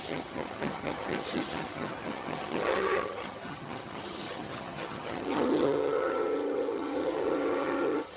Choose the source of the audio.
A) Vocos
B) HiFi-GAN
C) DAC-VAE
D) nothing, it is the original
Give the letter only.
B